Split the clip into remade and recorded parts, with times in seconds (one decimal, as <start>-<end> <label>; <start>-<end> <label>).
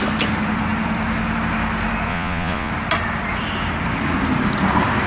0.0-2.1 recorded; 2.1-2.7 remade; 2.7-5.1 recorded